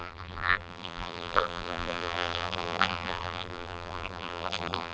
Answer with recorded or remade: remade